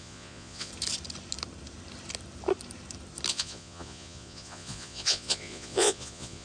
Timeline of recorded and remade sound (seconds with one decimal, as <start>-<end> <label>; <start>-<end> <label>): 0.0-0.7 remade; 0.7-3.3 recorded; 3.3-6.4 remade